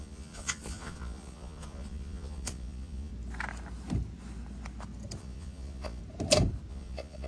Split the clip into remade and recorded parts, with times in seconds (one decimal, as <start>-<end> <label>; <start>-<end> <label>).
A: 0.0-3.1 remade; 3.1-5.2 recorded; 5.2-6.0 remade; 6.0-6.7 recorded; 6.7-7.3 remade